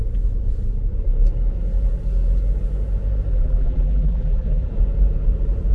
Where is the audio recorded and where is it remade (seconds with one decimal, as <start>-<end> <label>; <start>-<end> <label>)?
0.0-3.3 recorded; 3.3-4.7 remade; 4.7-5.7 recorded